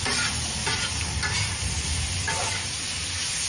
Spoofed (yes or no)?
no